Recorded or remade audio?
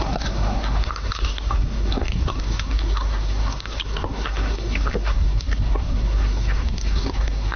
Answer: remade